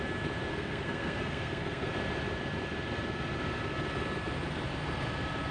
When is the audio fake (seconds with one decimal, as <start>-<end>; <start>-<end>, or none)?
0.5-1.9

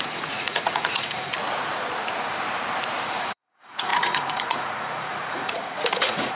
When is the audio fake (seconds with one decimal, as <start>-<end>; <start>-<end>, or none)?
0.0-1.3; 3.0-6.4

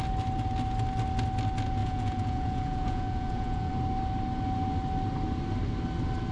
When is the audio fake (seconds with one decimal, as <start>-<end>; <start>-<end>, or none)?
1.8-3.7